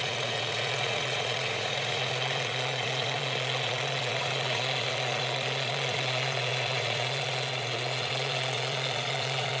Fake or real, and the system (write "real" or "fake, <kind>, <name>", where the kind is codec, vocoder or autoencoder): fake, vocoder, Vocos